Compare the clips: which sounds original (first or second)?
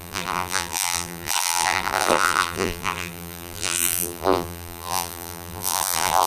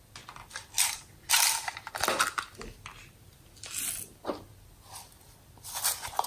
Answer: second